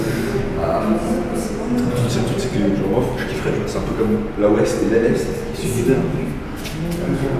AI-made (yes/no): no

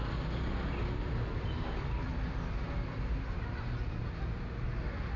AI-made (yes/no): no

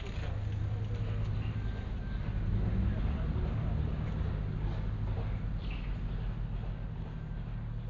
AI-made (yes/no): no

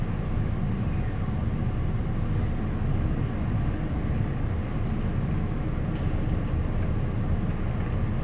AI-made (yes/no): no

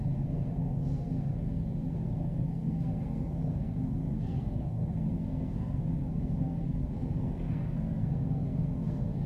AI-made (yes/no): yes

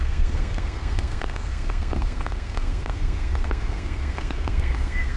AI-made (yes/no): yes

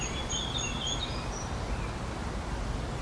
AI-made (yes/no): no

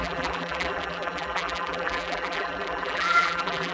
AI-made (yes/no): yes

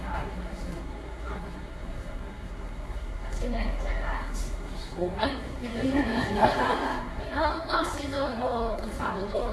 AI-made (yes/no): yes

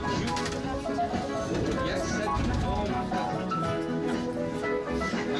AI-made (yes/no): no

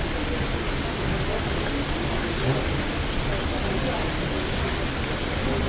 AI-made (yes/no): no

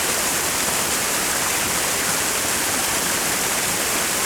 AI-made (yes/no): no